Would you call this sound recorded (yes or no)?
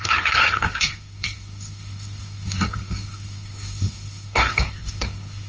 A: no